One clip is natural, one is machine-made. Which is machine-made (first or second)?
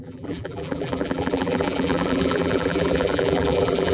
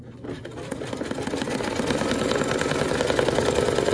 first